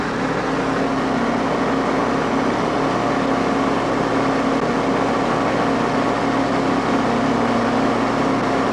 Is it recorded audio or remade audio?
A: recorded